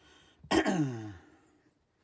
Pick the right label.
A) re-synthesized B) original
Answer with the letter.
B